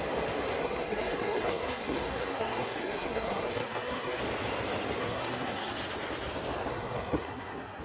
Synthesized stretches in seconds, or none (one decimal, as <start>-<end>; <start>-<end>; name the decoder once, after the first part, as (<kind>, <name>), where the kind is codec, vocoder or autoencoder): 0.6-4.2 (codec, SNAC); 5.0-5.7; 6.7-7.8